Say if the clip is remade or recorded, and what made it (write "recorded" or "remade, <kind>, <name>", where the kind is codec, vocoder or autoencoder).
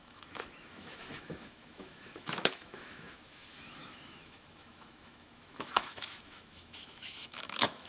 remade, autoencoder, DAC-VAE